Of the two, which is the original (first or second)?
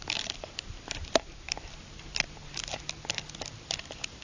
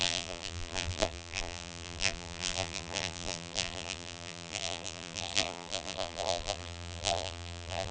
first